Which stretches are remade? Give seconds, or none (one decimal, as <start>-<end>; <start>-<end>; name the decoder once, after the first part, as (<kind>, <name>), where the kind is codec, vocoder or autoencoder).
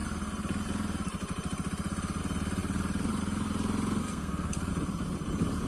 4.0-4.7 (codec, SNAC)